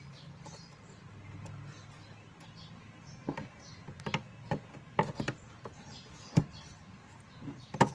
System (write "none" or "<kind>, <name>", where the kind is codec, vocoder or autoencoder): none